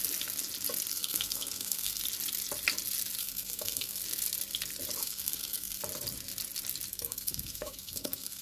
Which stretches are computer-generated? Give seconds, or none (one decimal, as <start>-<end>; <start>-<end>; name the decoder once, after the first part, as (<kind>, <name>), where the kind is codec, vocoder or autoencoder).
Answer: 0.9-2.0 (codec, SNAC); 3.2-4.0; 5.0-5.8; 6.9-8.4